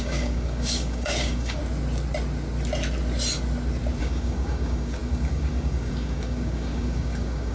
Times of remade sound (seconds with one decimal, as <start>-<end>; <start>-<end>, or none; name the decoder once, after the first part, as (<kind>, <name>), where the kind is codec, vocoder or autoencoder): 0.0-1.6 (codec, DAC); 4.0-7.5